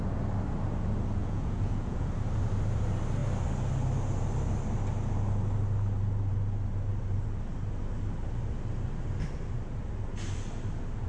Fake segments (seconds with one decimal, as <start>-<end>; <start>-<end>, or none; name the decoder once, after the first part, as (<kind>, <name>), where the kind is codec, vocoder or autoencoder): 1.2-2.1 (vocoder, Vocos)